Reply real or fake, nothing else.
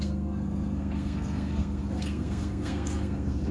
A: fake